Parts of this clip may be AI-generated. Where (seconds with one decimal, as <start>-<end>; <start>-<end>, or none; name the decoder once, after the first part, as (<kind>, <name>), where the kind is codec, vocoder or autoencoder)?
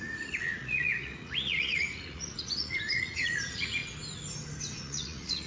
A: 0.0-3.8 (vocoder, Vocos); 4.8-5.5